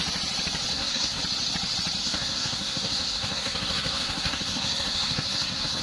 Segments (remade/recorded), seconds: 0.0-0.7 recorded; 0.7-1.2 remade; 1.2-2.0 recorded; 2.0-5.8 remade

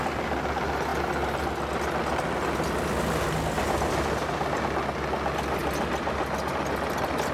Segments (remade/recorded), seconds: 0.0-7.3 recorded

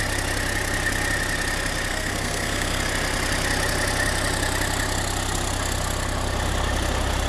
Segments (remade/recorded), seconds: 0.0-1.9 recorded; 1.9-2.8 remade; 2.8-7.3 recorded

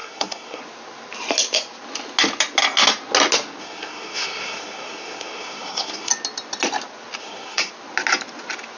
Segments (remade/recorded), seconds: 0.0-0.6 remade; 0.6-3.6 recorded; 3.6-6.1 remade; 6.1-7.2 recorded; 7.2-7.7 remade; 7.7-8.8 recorded

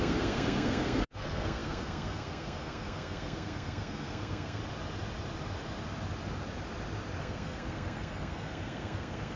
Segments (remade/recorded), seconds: 0.0-4.6 remade; 4.6-7.2 recorded; 7.2-9.4 remade